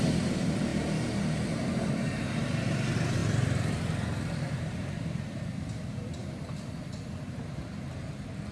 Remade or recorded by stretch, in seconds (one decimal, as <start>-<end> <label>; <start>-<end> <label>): 0.0-6.2 remade; 6.2-7.2 recorded; 7.2-8.5 remade